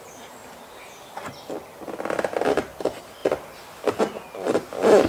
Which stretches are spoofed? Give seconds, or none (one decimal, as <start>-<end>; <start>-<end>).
none